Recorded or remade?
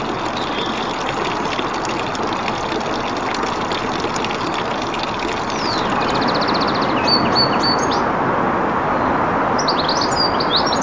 recorded